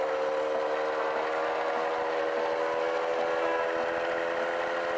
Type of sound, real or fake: real